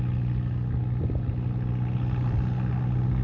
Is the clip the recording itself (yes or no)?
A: yes